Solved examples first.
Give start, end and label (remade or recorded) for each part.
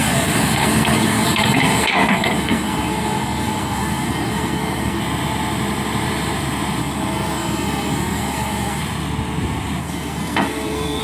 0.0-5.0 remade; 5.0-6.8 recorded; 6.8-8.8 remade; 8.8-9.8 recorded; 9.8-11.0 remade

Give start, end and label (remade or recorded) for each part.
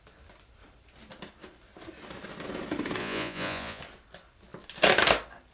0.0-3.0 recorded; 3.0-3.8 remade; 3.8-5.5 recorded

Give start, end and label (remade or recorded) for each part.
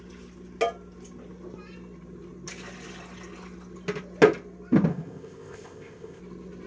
0.0-4.9 recorded; 4.9-6.2 remade; 6.2-6.7 recorded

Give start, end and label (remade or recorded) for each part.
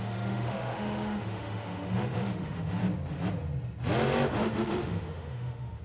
0.0-2.8 remade; 2.8-4.3 recorded; 4.3-5.8 remade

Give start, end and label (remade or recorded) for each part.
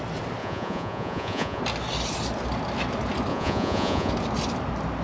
0.0-0.4 recorded; 0.4-1.6 remade; 1.6-3.3 recorded; 3.3-4.1 remade; 4.1-5.0 recorded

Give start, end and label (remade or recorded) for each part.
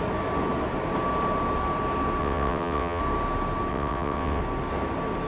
0.0-2.2 recorded; 2.2-3.0 remade; 3.0-3.7 recorded; 3.7-4.4 remade; 4.4-5.3 recorded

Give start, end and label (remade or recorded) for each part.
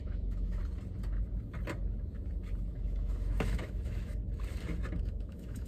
0.0-0.6 remade; 0.6-2.7 recorded; 2.7-4.2 remade; 4.2-5.0 recorded; 5.0-5.7 remade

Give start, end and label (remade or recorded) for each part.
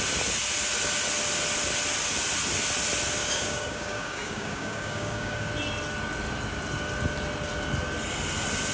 0.0-3.2 recorded; 3.2-5.5 remade; 5.5-8.7 recorded